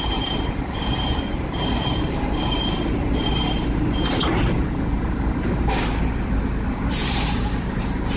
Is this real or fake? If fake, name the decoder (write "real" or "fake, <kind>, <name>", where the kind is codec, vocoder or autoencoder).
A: fake, vocoder, BigVGAN v2